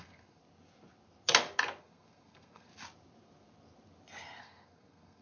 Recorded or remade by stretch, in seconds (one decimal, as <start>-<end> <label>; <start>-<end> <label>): 0.0-0.4 remade; 0.4-1.8 recorded; 1.8-2.7 remade; 2.7-4.4 recorded; 4.4-5.2 remade